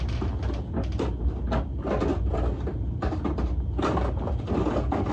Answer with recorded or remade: recorded